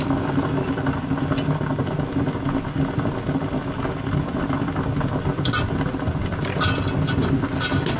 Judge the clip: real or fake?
real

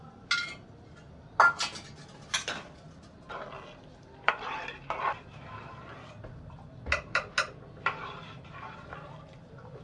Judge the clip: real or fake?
real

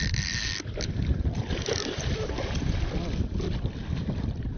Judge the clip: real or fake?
fake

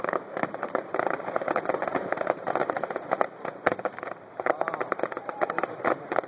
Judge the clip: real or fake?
fake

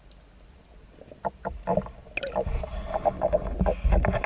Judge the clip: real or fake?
real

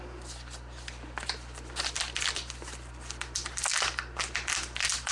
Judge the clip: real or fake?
fake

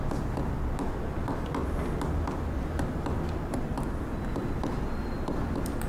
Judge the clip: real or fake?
real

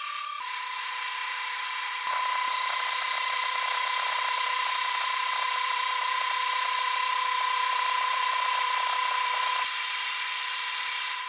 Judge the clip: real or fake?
fake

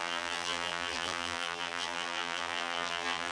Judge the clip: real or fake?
fake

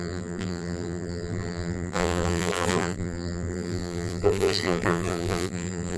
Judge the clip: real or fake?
fake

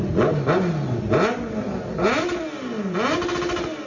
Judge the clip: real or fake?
real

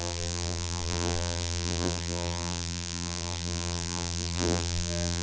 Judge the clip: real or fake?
fake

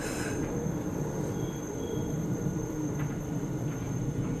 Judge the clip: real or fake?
fake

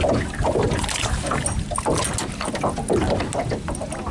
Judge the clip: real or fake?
real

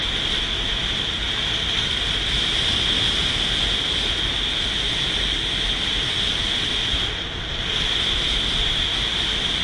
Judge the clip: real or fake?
real